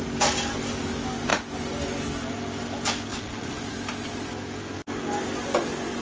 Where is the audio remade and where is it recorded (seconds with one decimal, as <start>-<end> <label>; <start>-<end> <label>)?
0.0-3.1 recorded; 3.1-3.6 remade; 3.6-6.0 recorded